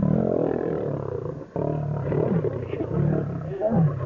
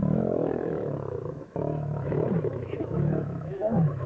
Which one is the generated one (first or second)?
second